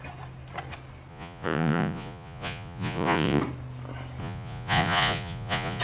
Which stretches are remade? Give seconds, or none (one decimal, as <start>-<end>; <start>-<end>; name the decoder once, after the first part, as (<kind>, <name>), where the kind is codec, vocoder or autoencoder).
1.1-3.4 (vocoder, Vocos); 4.2-5.8